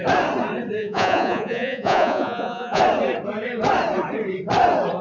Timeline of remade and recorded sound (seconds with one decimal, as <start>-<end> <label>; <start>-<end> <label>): 0.0-0.8 recorded; 0.8-2.8 remade; 2.8-5.0 recorded